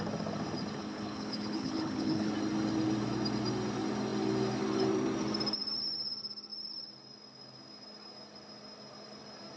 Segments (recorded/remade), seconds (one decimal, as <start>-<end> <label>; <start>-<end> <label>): 0.0-0.8 recorded; 0.8-2.3 remade; 2.3-9.6 recorded

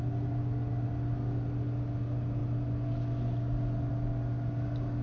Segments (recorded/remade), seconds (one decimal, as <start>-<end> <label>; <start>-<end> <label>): 0.0-5.0 recorded